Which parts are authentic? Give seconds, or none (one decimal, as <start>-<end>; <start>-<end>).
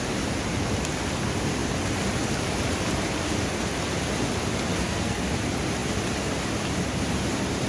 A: 0.0-4.7; 5.2-7.7